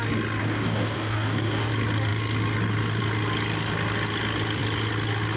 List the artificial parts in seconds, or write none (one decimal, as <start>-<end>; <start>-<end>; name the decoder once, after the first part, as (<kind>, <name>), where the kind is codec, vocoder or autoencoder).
0.4-1.7 (codec, DAC)